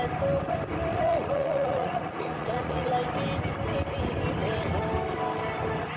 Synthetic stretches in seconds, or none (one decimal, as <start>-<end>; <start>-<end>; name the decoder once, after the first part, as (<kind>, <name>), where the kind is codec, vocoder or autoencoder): 0.9-2.9 (vocoder, Vocos)